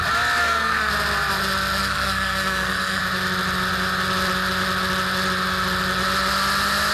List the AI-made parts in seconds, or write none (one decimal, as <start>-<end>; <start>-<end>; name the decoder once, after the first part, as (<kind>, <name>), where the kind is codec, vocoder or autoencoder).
0.4-0.9 (codec, SNAC); 1.8-3.0